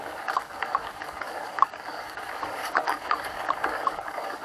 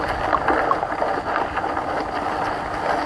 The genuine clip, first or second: second